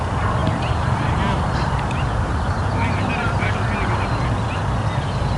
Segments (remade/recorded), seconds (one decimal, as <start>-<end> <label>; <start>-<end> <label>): 0.0-0.4 recorded; 0.4-3.6 remade; 3.6-5.4 recorded